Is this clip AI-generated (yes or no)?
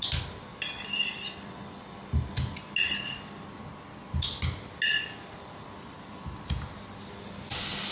no